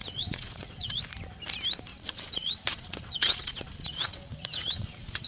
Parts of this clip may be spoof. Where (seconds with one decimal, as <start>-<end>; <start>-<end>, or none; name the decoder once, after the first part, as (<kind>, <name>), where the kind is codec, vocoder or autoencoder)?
0.0-1.0 (vocoder, WaveNeXt); 1.9-5.3